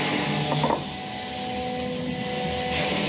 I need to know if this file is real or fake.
real